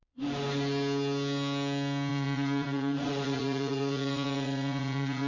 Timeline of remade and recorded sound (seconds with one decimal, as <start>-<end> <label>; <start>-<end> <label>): 0.0-2.1 recorded; 2.1-5.3 remade